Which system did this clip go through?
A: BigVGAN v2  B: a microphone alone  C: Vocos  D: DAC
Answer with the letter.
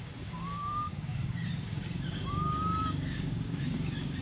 D